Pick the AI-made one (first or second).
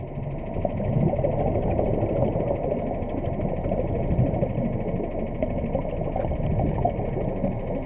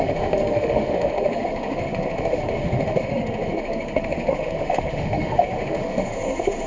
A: second